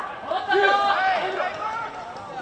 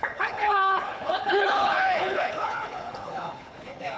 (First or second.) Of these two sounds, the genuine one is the first